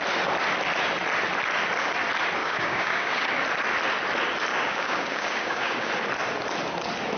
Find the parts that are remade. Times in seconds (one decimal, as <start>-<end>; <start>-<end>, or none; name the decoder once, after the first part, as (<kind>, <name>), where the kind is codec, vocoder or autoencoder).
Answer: 2.4-3.3 (codec, DAC); 4.5-5.9